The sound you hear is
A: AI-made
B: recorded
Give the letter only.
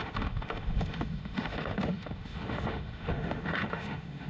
A